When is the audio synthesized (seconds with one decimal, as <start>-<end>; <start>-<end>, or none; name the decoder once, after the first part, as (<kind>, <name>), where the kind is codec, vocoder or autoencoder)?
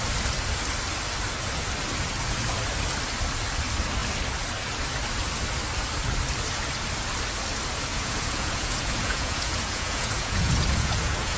7.9-11.4 (vocoder, Vocos)